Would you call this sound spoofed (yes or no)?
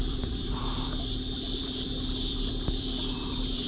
yes